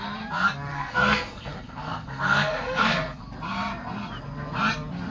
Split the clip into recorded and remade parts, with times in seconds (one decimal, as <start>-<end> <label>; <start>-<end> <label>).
0.0-0.7 recorded; 0.7-3.2 remade; 3.2-5.1 recorded